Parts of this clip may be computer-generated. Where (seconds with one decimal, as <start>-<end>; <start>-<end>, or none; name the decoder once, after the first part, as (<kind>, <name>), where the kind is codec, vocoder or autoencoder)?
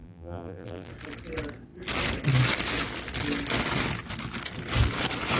0.0-0.9 (vocoder, BigVGAN v2)